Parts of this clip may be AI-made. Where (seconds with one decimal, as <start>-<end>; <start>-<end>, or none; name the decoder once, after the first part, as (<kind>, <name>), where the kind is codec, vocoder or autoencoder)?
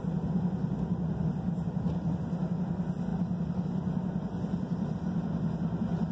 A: none